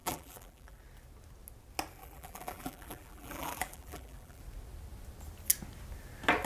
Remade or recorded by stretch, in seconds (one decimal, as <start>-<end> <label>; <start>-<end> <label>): 0.0-0.8 remade; 0.8-2.0 recorded; 2.0-4.4 remade; 4.4-6.5 recorded